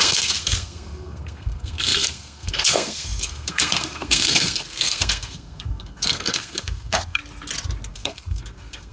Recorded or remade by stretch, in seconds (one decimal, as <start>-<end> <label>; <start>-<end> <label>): 0.0-7.2 remade; 7.2-7.9 recorded; 7.9-8.9 remade